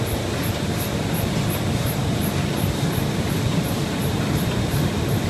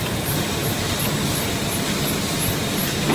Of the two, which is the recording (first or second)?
second